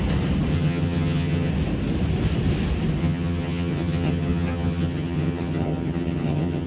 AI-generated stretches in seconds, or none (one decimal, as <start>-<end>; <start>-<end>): 0.5-1.5; 3.0-6.7